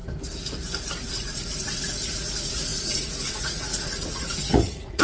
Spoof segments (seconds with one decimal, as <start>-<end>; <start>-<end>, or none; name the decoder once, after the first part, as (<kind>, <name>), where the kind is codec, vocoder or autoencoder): 1.1-5.0 (vocoder, Vocos)